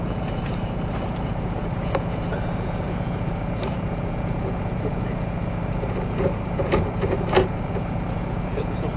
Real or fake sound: fake